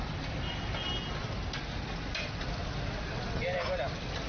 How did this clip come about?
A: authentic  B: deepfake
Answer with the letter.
A